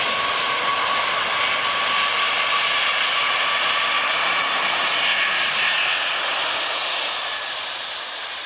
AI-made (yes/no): no